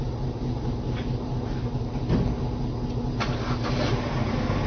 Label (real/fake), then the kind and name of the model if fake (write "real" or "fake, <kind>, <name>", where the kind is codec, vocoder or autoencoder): real